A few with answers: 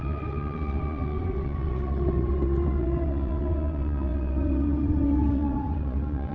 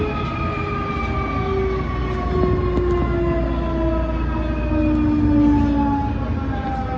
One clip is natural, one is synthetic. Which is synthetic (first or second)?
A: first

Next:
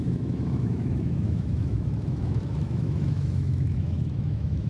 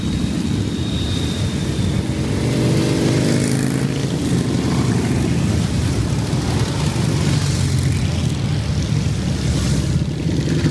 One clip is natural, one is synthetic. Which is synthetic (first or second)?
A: first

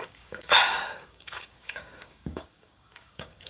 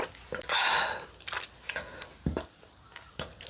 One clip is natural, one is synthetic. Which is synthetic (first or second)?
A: first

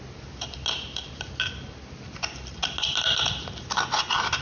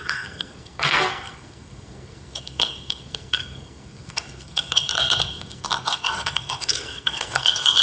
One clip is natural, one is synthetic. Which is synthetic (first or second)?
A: second